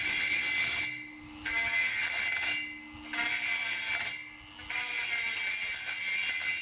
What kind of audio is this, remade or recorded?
recorded